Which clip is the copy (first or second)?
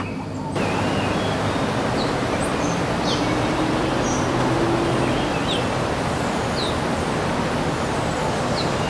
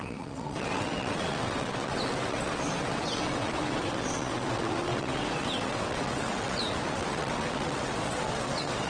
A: second